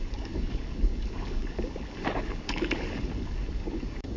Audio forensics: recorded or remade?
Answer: remade